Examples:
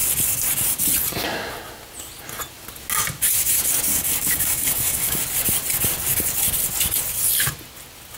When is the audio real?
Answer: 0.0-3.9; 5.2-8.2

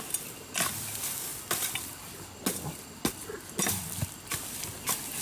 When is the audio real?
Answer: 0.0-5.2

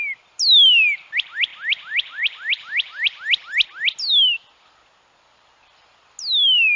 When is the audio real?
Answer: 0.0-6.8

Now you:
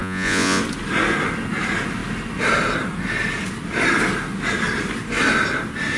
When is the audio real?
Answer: 0.6-6.0